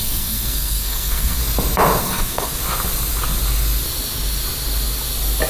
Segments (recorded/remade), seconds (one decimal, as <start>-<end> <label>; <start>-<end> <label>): 0.0-1.4 remade; 1.4-2.0 recorded; 2.0-2.6 remade; 2.6-5.5 recorded